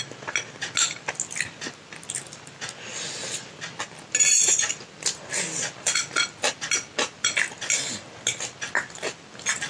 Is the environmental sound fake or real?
real